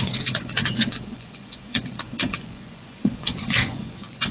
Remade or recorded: remade